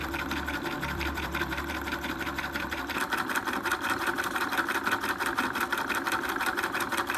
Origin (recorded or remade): remade